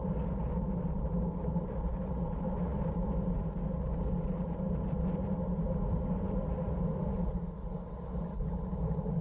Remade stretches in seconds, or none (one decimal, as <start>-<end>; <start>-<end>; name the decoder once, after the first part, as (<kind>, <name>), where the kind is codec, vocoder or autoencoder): none